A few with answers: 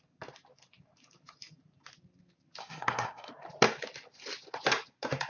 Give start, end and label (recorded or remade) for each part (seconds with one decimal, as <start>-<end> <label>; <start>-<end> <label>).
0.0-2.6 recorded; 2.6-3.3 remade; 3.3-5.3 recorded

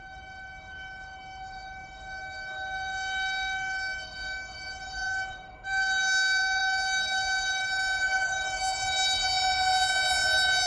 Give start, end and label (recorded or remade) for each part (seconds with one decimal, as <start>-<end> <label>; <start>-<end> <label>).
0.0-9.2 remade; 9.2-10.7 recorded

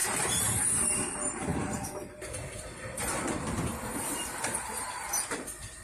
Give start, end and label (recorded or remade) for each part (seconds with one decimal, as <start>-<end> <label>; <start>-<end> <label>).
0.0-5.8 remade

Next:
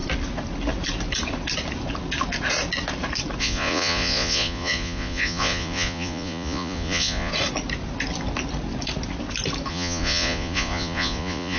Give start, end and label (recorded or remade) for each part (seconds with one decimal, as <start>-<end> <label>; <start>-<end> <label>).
0.0-3.4 recorded; 3.4-7.3 remade; 7.3-9.7 recorded; 9.7-11.6 remade